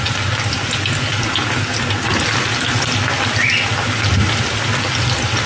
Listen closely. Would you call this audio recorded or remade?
recorded